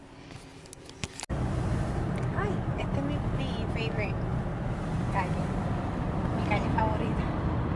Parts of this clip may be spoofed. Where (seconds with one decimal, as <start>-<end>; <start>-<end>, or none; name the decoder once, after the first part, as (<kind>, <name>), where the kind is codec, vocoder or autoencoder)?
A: none